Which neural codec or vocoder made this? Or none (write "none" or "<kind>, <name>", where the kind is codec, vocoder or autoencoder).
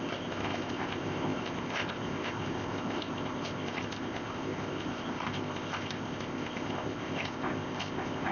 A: codec, ZipCodec